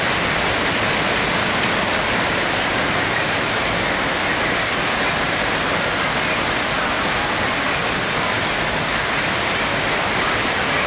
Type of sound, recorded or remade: recorded